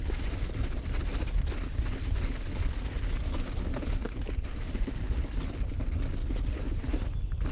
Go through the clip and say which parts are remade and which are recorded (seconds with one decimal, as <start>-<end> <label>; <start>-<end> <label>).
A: 0.0-1.1 recorded; 1.1-1.6 remade; 1.6-3.7 recorded; 3.7-4.9 remade; 4.9-7.5 recorded